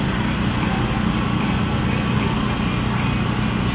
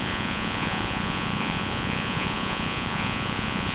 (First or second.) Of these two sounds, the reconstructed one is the second